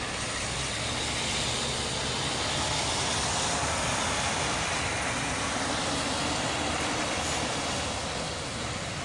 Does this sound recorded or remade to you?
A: recorded